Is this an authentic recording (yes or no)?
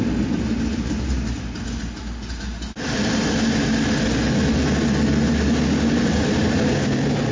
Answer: yes